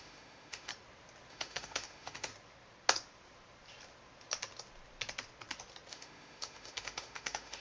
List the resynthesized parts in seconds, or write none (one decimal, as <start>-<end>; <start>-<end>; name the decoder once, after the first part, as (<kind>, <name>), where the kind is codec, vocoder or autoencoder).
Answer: 0.0-0.7 (autoencoder, DAC-VAE); 1.3-2.3; 5.9-7.6